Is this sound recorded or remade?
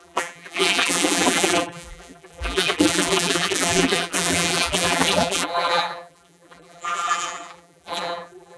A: remade